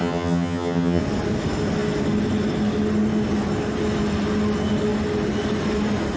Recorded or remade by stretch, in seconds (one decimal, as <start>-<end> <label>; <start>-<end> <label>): 0.0-1.0 remade; 1.0-6.2 recorded